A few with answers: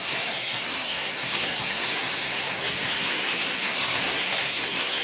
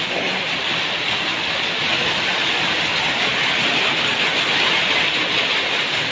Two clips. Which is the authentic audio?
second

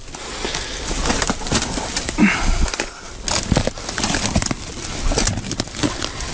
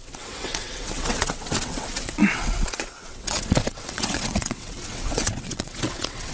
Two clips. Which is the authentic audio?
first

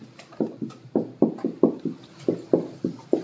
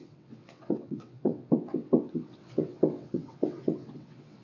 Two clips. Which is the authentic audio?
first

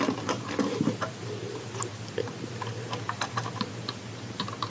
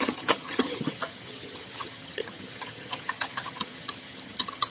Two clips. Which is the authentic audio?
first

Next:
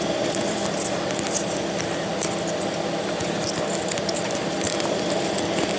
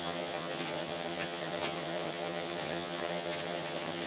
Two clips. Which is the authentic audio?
first